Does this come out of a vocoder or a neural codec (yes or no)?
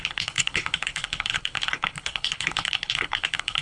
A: yes